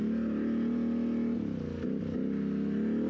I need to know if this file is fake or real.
real